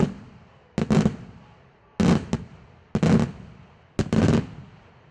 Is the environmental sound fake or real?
real